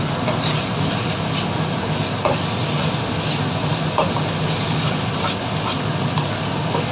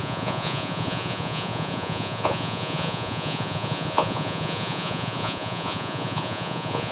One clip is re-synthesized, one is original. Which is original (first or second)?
first